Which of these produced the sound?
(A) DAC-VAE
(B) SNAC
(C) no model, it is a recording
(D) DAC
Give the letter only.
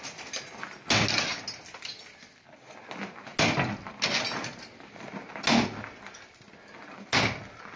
C